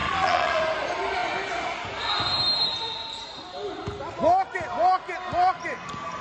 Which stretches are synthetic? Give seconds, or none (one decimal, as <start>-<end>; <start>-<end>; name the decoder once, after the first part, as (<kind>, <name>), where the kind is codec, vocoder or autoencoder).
0.0-0.6 (vocoder, Vocos)